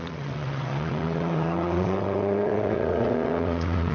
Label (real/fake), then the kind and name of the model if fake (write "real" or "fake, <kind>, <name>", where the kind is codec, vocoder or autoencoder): fake, vocoder, WaveNeXt